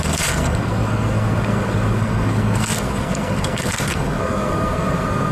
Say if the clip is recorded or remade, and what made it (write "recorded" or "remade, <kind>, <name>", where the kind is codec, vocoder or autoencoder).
remade, codec, SNAC